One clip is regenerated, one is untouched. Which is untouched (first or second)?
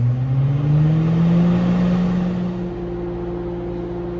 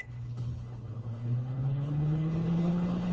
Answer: first